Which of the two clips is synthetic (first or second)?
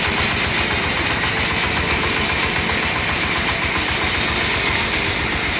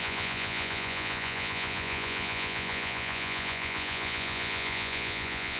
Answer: second